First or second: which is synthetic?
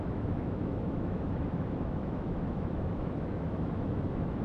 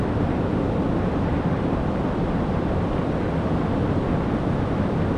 first